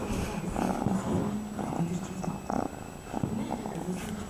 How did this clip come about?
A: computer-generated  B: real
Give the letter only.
B